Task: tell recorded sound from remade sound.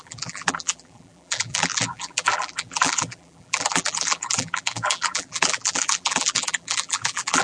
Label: remade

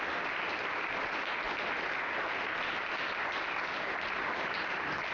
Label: recorded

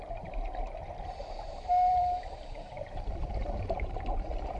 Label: remade